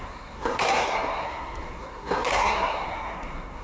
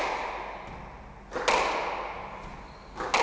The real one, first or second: second